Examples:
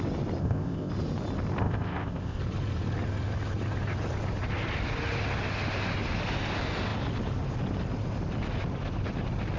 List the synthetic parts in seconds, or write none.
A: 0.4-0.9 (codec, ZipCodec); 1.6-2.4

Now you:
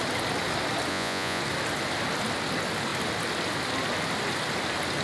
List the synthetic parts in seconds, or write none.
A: 0.9-1.4 (vocoder, Vocos)

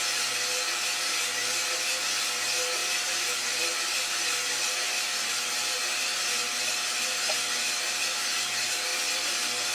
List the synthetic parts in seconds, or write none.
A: 2.8-7.3 (vocoder, BigVGAN v2); 8.9-9.7

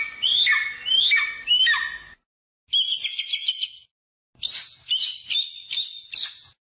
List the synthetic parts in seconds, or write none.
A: none

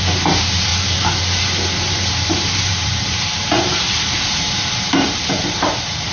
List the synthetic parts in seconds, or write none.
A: 0.0-0.7 (vocoder, BigVGAN v2); 2.1-6.1

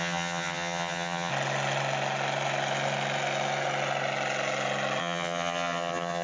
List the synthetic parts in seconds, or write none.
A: 0.0-1.3 (vocoder, HiFi-GAN); 5.0-6.2

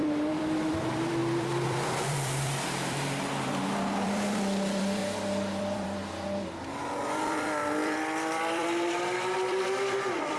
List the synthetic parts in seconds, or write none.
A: 0.0-5.0 (vocoder, BigVGAN v2); 5.6-10.4

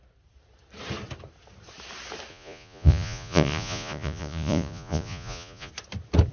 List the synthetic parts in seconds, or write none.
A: 2.3-5.7 (vocoder, Vocos)